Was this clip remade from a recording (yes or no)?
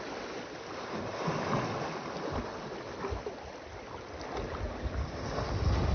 no